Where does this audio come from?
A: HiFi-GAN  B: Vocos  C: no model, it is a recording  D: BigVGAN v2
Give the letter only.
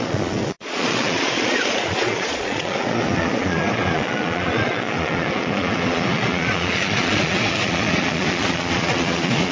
B